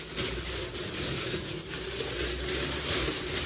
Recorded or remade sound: recorded